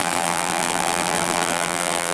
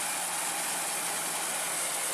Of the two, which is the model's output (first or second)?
first